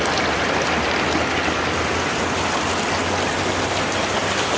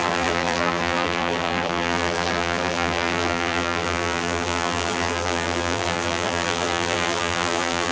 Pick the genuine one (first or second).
first